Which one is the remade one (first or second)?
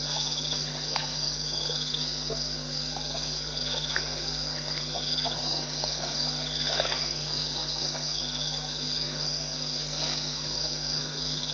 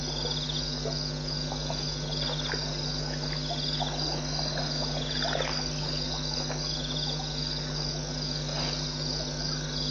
first